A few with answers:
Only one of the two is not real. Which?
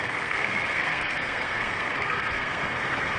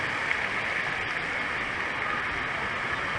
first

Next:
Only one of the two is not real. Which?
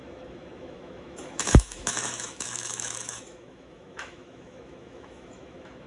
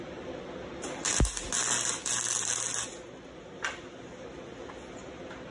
first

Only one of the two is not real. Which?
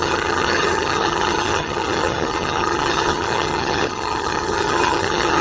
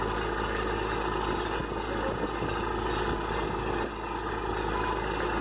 first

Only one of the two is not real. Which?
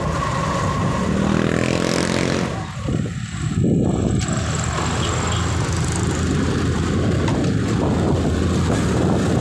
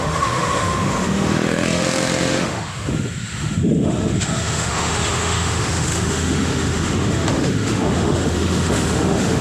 second